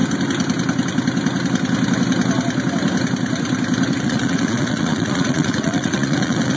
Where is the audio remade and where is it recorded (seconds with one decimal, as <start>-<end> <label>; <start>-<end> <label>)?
0.0-4.0 recorded; 4.0-6.6 remade